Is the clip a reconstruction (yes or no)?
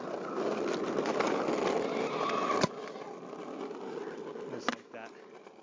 no